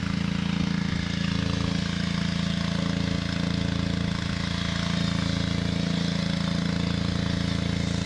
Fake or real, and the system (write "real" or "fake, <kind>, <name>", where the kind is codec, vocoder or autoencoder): real